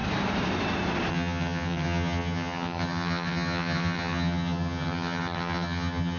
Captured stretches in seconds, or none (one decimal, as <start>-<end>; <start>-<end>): 0.0-1.1

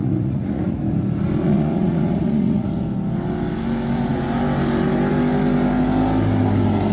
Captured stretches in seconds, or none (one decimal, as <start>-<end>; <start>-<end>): 0.8-1.4; 2.7-6.9

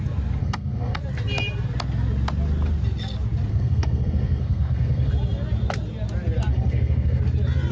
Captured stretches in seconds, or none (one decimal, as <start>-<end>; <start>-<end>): 0.0-0.4; 1.0-3.5; 5.1-6.5; 7.2-7.7

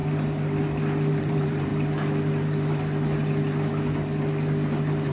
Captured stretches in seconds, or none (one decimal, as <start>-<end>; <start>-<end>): 0.0-1.2; 1.7-5.1

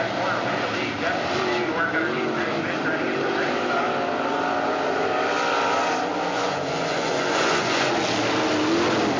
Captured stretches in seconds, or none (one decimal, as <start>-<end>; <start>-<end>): 0.0-6.3; 7.9-9.2

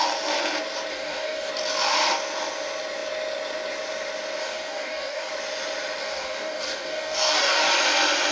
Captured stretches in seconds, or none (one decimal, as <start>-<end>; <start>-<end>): 0.0-0.9; 1.5-4.4; 5.3-6.0; 7.7-8.3

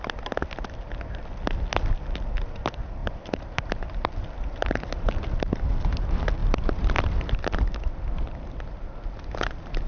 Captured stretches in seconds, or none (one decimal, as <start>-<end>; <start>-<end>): 0.0-9.9

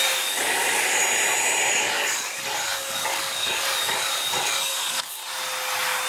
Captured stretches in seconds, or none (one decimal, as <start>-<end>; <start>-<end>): 1.0-1.7; 5.2-6.1